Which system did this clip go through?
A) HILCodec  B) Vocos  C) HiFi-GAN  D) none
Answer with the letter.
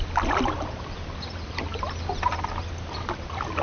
D